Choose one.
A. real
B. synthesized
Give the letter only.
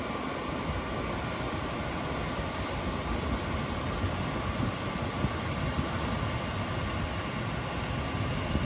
A